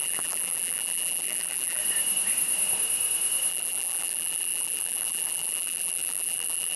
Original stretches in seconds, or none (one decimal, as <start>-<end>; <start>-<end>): 1.8-3.5